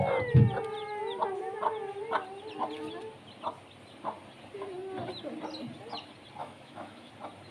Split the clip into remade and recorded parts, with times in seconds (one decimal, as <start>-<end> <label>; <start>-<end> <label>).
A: 0.0-6.4 recorded; 6.4-7.1 remade; 7.1-7.5 recorded